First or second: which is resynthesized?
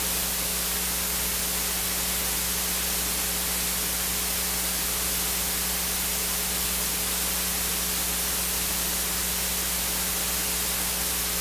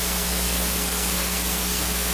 second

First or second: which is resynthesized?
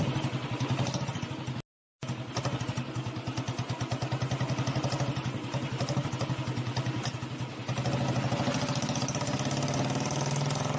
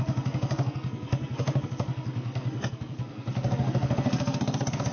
second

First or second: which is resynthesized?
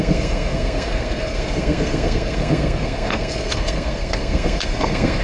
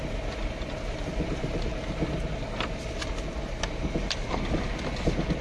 first